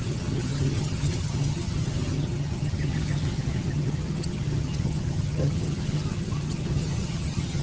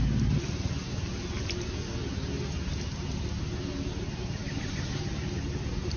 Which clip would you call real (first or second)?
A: second